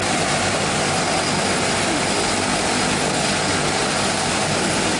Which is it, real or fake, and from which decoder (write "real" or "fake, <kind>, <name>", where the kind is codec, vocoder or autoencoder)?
real